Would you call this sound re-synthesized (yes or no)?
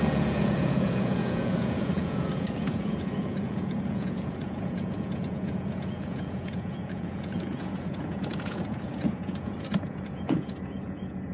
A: yes